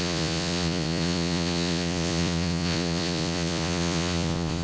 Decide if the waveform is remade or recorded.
remade